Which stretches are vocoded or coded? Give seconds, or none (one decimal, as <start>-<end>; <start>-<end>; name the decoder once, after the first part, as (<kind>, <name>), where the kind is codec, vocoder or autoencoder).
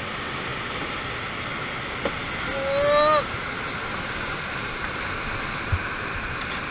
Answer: none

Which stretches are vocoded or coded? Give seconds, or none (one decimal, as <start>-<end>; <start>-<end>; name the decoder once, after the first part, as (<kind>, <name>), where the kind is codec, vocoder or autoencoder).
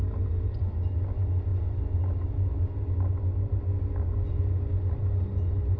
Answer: none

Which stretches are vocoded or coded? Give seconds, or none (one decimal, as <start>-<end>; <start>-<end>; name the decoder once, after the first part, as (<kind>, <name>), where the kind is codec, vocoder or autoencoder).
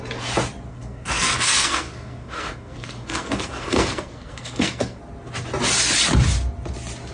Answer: 0.7-5.0 (codec, SNAC)